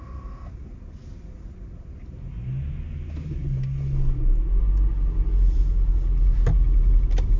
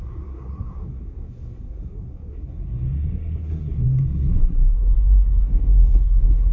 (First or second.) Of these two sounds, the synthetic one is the second